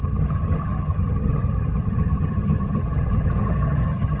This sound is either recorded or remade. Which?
remade